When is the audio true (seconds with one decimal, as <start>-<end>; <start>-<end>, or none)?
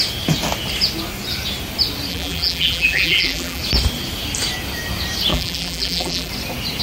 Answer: 0.0-2.1; 3.6-5.3; 6.3-6.8